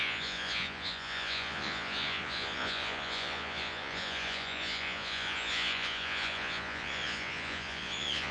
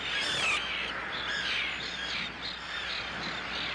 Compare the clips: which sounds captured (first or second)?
second